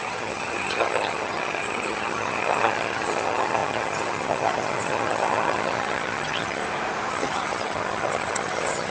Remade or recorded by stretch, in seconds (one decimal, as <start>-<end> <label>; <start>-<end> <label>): 0.0-6.6 remade; 6.6-7.1 recorded; 7.1-8.9 remade